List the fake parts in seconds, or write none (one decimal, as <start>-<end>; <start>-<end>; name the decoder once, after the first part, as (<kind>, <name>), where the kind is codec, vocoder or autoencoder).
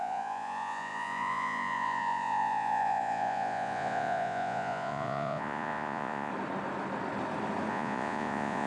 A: 0.0-6.3 (vocoder, Vocos); 7.7-8.7